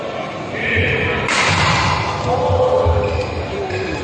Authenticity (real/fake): real